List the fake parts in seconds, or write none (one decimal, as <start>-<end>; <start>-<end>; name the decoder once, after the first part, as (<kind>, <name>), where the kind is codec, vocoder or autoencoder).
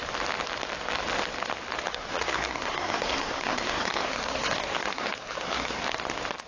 1.9-5.8 (codec, SNAC)